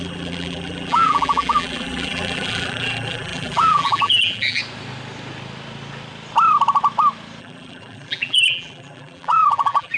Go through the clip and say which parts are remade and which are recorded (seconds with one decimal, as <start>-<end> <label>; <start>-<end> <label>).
0.0-4.6 remade; 4.6-7.4 recorded; 7.4-10.0 remade